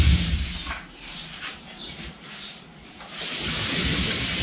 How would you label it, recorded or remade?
remade